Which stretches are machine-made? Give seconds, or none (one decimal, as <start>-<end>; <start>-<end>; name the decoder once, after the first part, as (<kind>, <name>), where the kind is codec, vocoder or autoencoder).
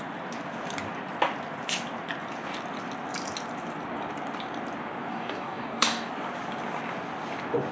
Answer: 5.1-6.1 (codec, DAC)